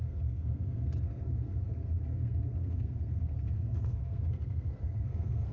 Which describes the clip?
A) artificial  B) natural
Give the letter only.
A